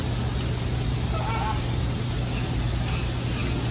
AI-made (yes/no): no